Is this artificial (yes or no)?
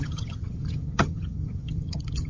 yes